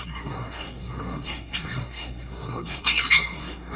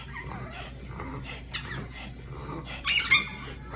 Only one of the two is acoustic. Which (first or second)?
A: second